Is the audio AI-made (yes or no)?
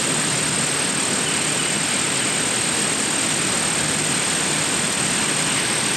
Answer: no